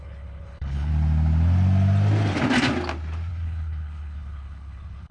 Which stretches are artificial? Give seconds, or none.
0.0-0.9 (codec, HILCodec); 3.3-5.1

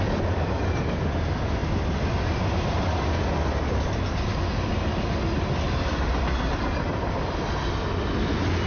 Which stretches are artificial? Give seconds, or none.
none

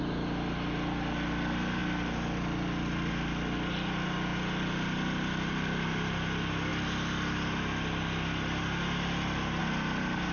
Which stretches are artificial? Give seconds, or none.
none

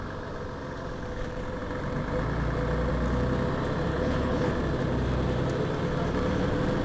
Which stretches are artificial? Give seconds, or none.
3.9-4.5 (codec, HILCodec)

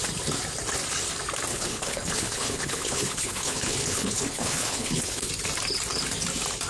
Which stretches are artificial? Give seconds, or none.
1.5-5.3 (codec, HILCodec)

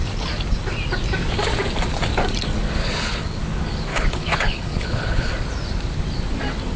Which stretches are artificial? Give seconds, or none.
2.8-3.4 (codec, HILCodec); 3.9-5.3

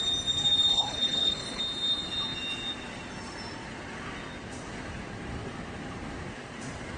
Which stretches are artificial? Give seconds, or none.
0.7-1.6 (codec, HILCodec)